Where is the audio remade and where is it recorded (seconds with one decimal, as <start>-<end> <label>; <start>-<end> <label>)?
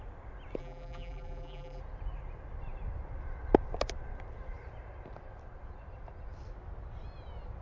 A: 0.0-0.6 recorded; 0.6-1.8 remade; 1.8-7.6 recorded